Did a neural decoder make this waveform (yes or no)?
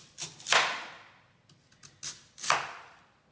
no